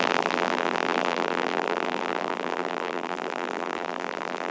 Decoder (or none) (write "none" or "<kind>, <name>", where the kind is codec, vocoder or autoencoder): vocoder, BigVGAN v2